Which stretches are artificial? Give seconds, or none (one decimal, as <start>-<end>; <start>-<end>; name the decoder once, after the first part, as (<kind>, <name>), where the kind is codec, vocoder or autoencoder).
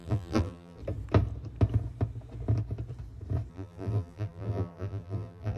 0.0-0.8 (vocoder, BigVGAN v2); 3.5-5.6